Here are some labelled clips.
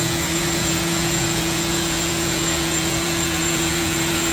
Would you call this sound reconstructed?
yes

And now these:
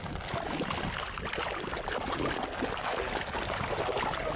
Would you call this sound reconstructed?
no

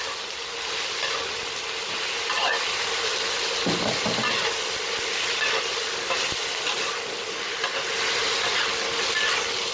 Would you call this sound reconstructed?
no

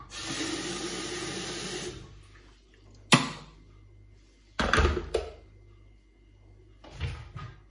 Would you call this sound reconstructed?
no